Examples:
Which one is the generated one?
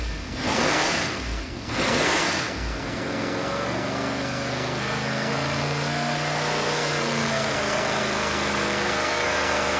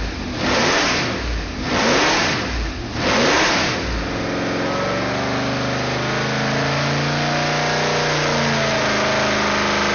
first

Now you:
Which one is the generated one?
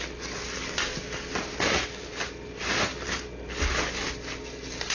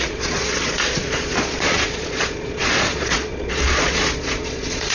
second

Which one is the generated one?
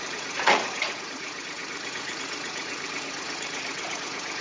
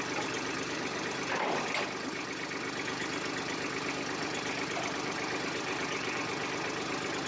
first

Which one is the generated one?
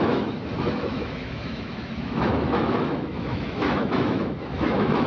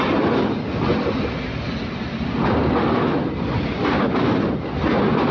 first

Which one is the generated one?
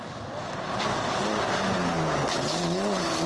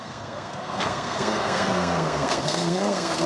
second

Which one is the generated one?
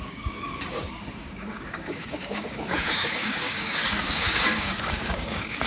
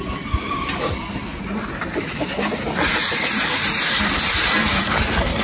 first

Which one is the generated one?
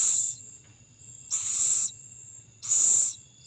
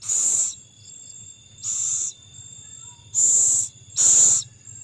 first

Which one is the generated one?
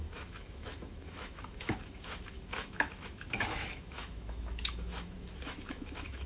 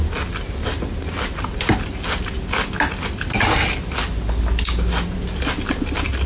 first